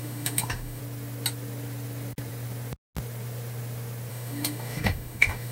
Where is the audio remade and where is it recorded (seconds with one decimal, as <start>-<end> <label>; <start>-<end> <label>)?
0.0-0.8 remade; 0.8-4.1 recorded; 4.1-5.5 remade